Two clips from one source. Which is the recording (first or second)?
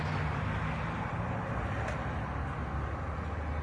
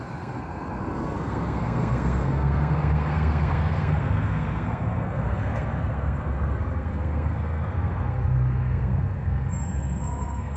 first